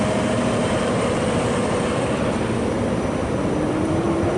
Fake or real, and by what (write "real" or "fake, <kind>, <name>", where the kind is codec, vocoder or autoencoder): fake, vocoder, BigVGAN v2